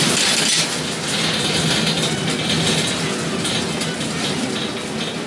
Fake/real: real